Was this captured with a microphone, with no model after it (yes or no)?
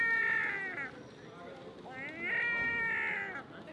yes